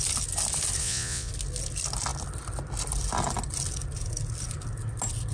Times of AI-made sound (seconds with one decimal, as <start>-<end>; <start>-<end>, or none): 0.8-1.3